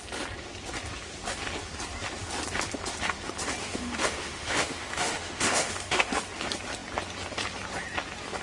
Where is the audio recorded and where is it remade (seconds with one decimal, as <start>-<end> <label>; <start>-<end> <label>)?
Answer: 0.0-3.6 recorded; 3.6-6.1 remade; 6.1-8.4 recorded